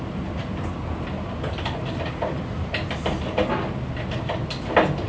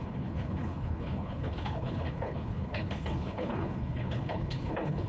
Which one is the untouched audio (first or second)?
first